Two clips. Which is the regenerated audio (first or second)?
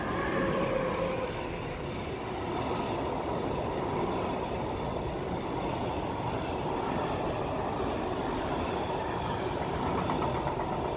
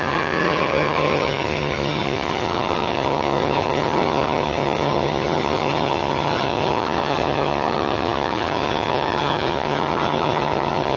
second